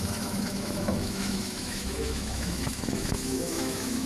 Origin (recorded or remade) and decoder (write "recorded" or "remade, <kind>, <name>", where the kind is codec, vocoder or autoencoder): remade, autoencoder, DAC-VAE